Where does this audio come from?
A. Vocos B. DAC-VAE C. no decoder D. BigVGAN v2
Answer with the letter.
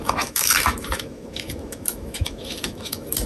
B